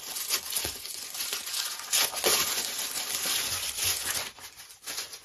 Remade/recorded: remade